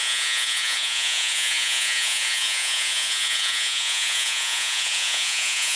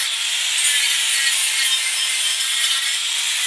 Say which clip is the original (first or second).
second